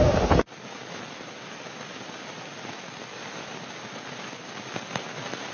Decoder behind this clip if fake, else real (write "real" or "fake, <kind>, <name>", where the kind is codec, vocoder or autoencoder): real